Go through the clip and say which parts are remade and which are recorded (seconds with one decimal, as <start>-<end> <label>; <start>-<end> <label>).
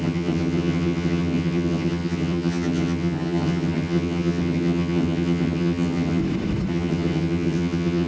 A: 0.0-6.2 remade; 6.2-6.7 recorded; 6.7-8.1 remade